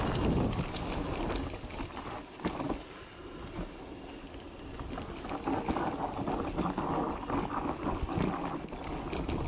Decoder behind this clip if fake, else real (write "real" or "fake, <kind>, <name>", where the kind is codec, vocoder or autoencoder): real